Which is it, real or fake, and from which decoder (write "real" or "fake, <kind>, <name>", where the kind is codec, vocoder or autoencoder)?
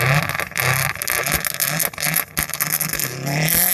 real